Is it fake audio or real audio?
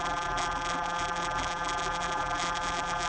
fake